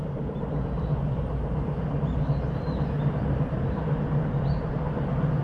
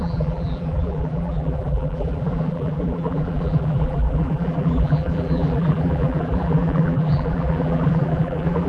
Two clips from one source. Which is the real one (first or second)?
first